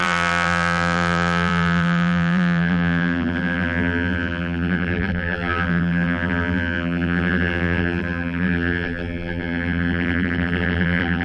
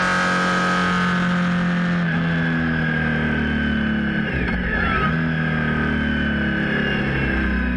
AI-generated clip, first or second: first